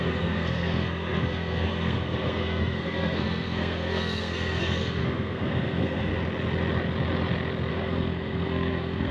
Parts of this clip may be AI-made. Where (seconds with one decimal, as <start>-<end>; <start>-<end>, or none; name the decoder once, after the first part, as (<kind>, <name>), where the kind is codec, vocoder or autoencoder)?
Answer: 0.0-6.1 (codec, SNAC); 7.7-9.1